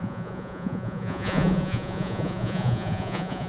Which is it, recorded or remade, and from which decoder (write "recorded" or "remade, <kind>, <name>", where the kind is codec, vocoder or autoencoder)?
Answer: remade, vocoder, Vocos